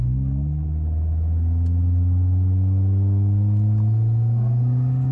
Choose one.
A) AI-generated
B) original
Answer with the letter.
B